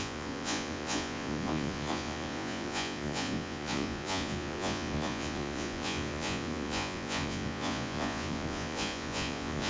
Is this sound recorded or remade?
remade